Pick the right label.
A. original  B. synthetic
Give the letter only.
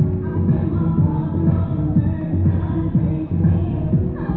A